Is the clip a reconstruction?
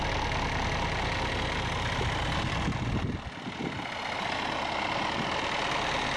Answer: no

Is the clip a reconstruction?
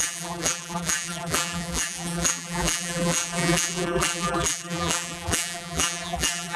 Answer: yes